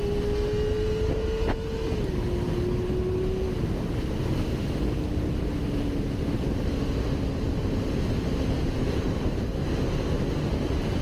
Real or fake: real